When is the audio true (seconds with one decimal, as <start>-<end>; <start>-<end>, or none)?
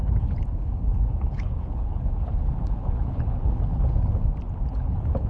4.1-4.7